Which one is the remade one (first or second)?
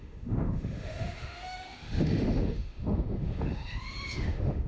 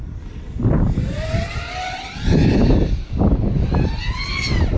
first